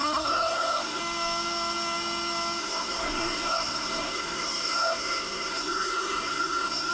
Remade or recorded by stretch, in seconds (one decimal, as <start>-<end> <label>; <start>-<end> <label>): 0.0-1.0 remade; 1.0-2.6 recorded; 2.6-6.9 remade